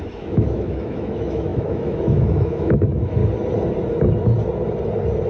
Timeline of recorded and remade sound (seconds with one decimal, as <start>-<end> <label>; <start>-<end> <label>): 0.0-3.2 remade; 3.2-5.3 recorded